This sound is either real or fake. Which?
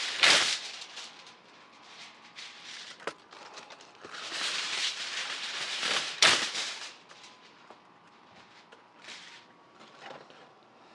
fake